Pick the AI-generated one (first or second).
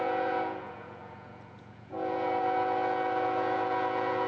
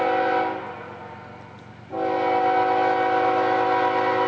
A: first